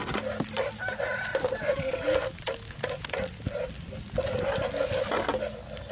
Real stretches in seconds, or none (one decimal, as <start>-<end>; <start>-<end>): 0.0-5.9

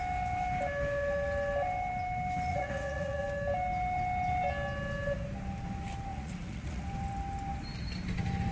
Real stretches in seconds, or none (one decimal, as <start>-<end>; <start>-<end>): 0.0-2.5; 3.2-6.1; 6.8-8.5

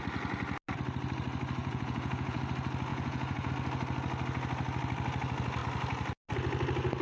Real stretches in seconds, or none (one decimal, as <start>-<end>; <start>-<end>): 0.0-1.6; 2.4-2.9; 3.5-7.0